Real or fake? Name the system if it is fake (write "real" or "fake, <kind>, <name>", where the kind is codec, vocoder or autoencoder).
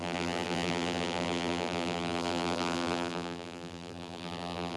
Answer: fake, vocoder, BigVGAN v2